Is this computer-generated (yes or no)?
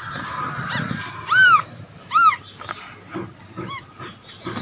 no